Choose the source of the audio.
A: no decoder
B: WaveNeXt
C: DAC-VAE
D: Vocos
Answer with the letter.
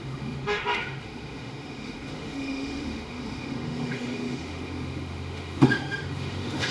C